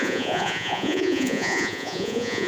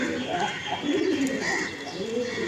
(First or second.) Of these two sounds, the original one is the second